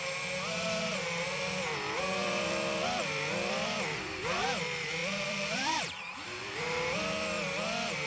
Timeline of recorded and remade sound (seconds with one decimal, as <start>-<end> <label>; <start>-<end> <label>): 0.0-2.2 recorded; 2.2-4.2 remade; 4.2-5.0 recorded; 5.0-6.6 remade; 6.6-8.1 recorded